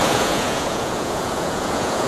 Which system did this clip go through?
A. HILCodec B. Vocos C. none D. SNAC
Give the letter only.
B